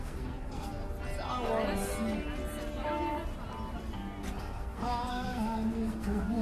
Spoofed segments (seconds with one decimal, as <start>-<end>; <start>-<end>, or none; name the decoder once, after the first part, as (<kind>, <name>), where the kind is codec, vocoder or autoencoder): 0.0-0.8 (codec, SNAC); 4.4-6.4